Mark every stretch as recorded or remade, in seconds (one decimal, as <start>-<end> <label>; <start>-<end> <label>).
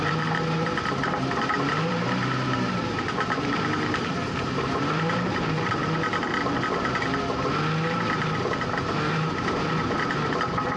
0.0-5.8 remade; 5.8-8.7 recorded; 8.7-10.8 remade